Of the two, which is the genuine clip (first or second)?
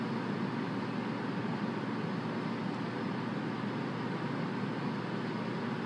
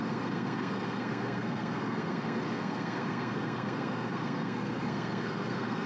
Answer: first